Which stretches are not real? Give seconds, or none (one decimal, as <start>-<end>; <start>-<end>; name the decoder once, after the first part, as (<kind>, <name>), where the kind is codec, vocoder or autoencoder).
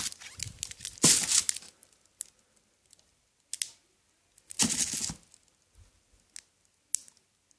none